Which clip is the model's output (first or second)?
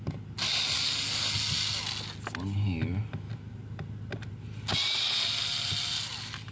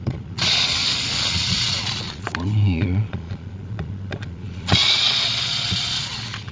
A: second